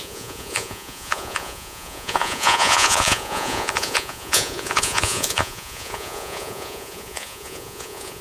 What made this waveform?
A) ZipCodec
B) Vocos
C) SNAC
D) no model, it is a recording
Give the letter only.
B